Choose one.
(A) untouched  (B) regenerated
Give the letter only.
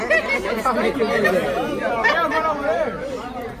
A